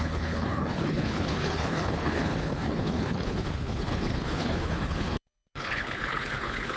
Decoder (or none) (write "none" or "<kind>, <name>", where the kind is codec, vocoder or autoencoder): codec, HILCodec